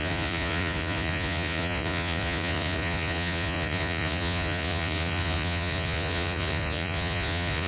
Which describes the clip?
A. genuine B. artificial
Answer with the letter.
B